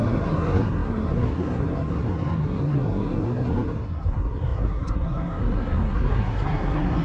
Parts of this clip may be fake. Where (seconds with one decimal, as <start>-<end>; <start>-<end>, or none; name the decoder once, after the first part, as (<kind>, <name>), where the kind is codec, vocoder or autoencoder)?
0.0-7.0 (codec, SNAC)